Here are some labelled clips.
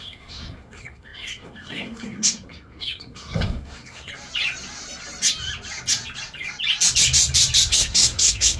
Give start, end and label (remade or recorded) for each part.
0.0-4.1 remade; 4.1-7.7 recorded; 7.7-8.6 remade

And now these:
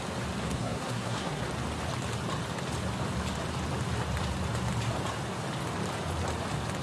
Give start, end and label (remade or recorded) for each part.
0.0-0.4 recorded; 0.4-1.4 remade; 1.4-6.8 recorded

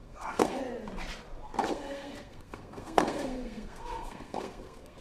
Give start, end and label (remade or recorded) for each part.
0.0-0.6 remade; 0.6-1.7 recorded; 1.7-5.0 remade

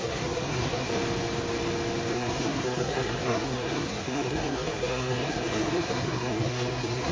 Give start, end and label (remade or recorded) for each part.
0.0-0.9 remade; 0.9-2.1 recorded; 2.1-7.1 remade

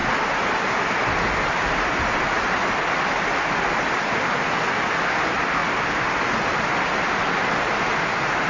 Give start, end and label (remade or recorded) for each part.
0.0-8.5 recorded

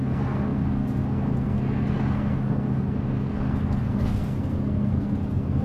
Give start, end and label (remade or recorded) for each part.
0.0-5.6 remade

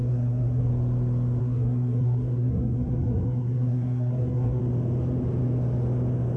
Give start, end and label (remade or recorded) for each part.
0.0-0.7 remade; 0.7-1.4 recorded; 1.4-4.6 remade; 4.6-6.4 recorded

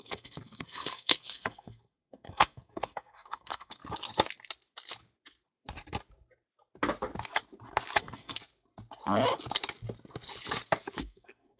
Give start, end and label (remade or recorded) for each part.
0.0-3.8 remade; 3.8-8.0 recorded; 8.0-8.4 remade; 8.4-11.0 recorded; 11.0-11.6 remade